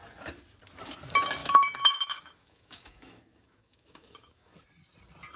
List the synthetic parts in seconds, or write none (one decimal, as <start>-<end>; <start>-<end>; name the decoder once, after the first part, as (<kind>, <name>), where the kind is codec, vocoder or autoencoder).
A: 1.4-4.6 (autoencoder, DAC-VAE)